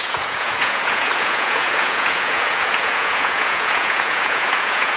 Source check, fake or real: fake